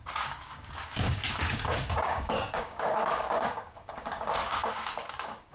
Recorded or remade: remade